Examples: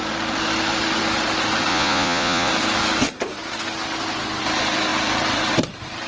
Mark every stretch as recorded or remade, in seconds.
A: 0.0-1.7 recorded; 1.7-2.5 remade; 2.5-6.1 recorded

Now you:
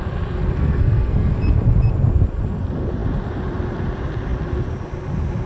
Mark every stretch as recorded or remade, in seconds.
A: 0.0-0.6 recorded; 0.6-1.3 remade; 1.3-5.5 recorded

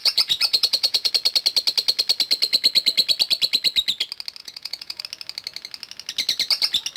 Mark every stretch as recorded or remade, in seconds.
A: 0.0-1.1 remade; 1.1-4.4 recorded; 4.4-5.0 remade; 5.0-7.0 recorded

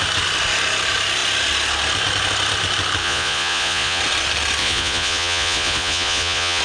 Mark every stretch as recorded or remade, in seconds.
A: 0.0-3.0 recorded; 3.0-4.0 remade; 4.0-4.6 recorded; 4.6-6.6 remade

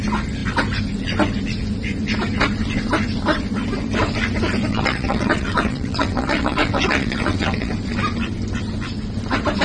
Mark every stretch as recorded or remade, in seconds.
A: 0.0-4.7 recorded; 4.7-7.7 remade; 7.7-9.6 recorded